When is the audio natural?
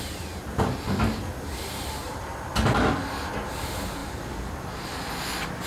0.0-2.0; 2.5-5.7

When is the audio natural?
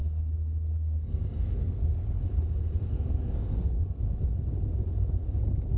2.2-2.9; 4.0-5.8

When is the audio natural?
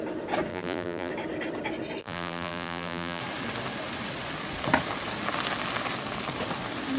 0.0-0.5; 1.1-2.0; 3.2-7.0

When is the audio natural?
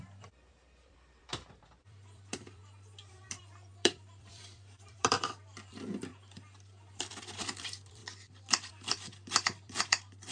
2.6-3.1; 6.1-6.9; 8.0-8.7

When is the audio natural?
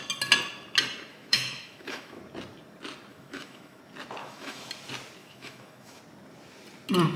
0.0-1.1; 2.2-3.1; 3.8-4.2; 4.7-5.2; 6.0-7.2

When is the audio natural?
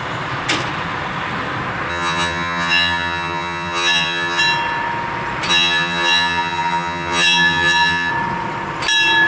0.0-1.9; 4.4-5.5; 8.1-9.3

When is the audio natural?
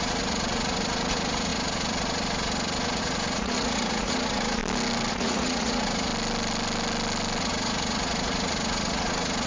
4.6-5.1; 6.1-7.4